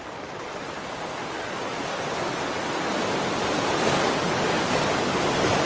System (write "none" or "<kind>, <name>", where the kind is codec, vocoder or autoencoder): none